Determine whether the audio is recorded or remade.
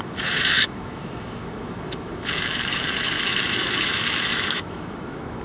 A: remade